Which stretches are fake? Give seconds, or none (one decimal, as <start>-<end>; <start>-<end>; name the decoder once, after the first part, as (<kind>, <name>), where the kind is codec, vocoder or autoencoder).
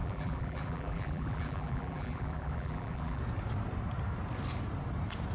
0.0-3.2 (vocoder, BigVGAN v2)